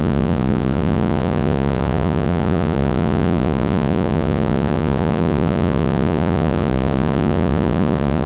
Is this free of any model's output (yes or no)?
no